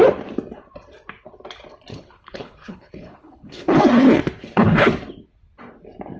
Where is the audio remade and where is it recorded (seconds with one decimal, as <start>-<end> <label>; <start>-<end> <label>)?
0.0-1.9 recorded; 1.9-3.8 remade; 3.8-4.4 recorded; 4.4-4.9 remade; 4.9-6.2 recorded